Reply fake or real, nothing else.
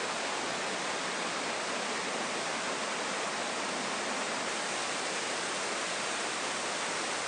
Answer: real